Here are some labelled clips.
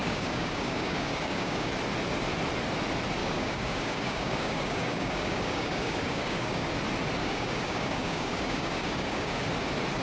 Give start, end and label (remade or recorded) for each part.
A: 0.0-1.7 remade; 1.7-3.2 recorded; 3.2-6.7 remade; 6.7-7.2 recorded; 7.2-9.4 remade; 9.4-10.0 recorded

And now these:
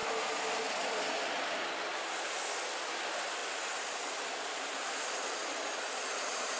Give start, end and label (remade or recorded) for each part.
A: 0.0-6.6 recorded

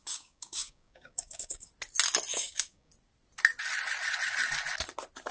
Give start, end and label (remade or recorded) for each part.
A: 0.0-1.7 remade; 1.7-2.3 recorded; 2.3-2.9 remade; 2.9-5.3 recorded

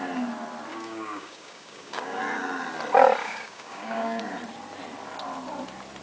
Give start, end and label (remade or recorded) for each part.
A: 0.0-0.7 recorded; 0.7-2.2 remade; 2.2-3.2 recorded; 3.2-4.2 remade; 4.2-6.0 recorded

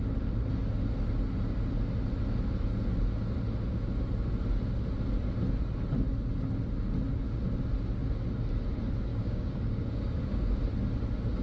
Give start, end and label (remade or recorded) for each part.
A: 0.0-9.1 recorded; 9.1-10.5 remade; 10.5-11.4 recorded

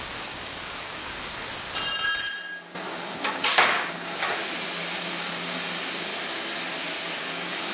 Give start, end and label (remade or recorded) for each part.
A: 0.0-1.5 remade; 1.5-2.9 recorded; 2.9-4.4 remade; 4.4-4.9 recorded; 4.9-6.1 remade; 6.1-7.2 recorded; 7.2-7.7 remade

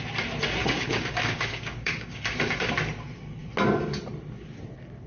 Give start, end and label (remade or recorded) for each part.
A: 0.0-0.6 recorded; 0.6-2.7 remade; 2.7-5.1 recorded

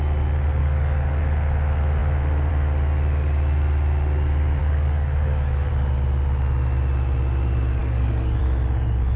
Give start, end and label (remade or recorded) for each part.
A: 0.0-0.6 recorded; 0.6-1.2 remade; 1.2-4.6 recorded; 4.6-5.7 remade; 5.7-7.8 recorded; 7.8-8.4 remade; 8.4-9.2 recorded